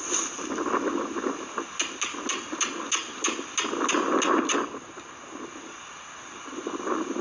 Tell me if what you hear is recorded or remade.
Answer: recorded